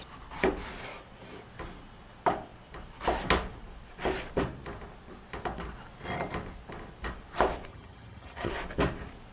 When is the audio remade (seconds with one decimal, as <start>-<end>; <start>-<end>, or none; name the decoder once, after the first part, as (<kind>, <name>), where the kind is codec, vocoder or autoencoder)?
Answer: 7.7-8.5 (vocoder, HiFi-GAN)